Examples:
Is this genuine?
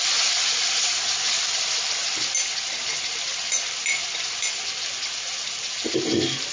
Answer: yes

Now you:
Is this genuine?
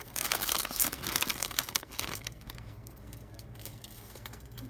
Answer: no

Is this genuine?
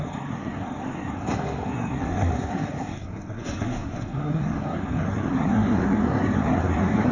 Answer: no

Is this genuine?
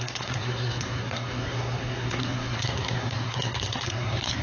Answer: no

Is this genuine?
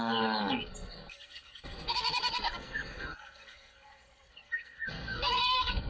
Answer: no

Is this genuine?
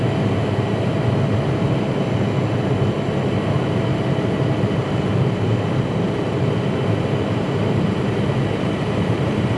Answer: yes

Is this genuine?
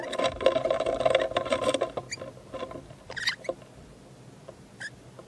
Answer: yes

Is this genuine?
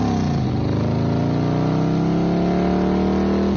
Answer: yes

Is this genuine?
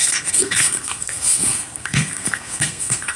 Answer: no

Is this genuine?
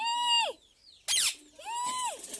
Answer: yes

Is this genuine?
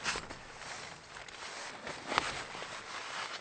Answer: yes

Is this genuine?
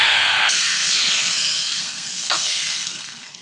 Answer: no